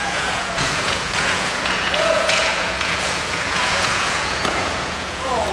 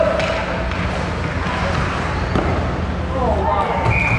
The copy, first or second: first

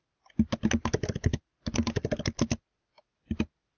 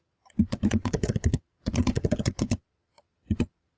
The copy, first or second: second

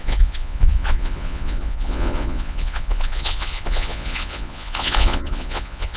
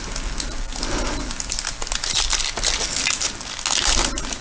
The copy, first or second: first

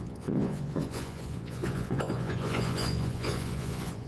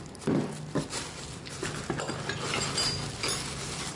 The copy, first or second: first